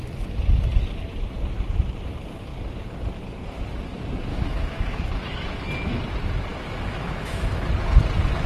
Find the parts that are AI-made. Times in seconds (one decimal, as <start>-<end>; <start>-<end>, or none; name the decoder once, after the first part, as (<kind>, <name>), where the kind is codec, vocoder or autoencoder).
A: 4.3-5.0 (autoencoder, DAC-VAE); 6.5-7.5